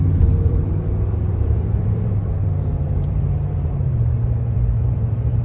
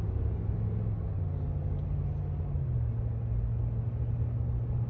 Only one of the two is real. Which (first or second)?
second